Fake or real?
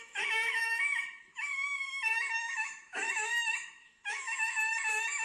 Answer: fake